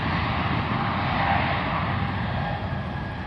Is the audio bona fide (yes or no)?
yes